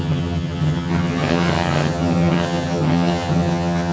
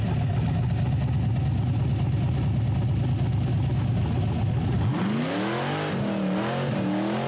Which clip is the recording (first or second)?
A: second